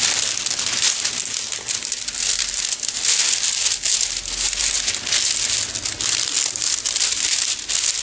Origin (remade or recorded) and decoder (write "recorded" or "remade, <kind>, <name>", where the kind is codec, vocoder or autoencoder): recorded